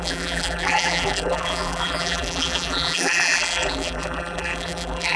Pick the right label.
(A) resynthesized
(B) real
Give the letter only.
A